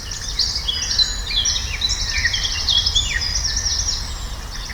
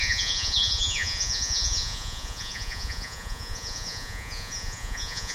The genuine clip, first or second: first